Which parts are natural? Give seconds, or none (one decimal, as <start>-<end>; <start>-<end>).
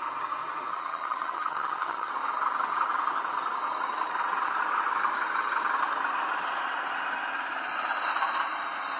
0.0-0.7; 2.1-9.0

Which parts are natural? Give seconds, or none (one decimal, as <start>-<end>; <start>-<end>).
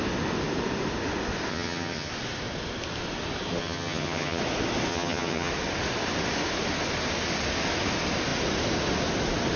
0.0-1.5; 2.1-3.6; 4.4-4.9; 5.5-9.6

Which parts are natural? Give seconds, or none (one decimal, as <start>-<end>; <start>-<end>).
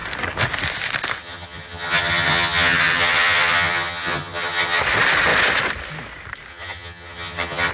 0.0-1.2; 4.8-6.5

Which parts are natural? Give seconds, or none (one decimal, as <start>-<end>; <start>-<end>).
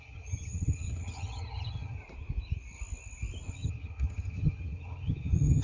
2.0-3.5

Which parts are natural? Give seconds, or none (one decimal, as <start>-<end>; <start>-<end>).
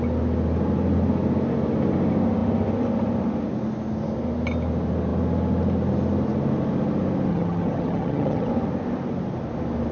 0.0-7.3; 8.5-9.9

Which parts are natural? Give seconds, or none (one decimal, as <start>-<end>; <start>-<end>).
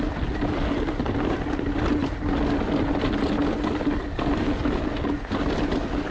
0.0-6.1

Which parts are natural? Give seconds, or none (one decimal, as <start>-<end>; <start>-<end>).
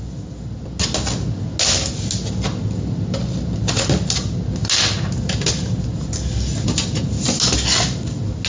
0.0-8.5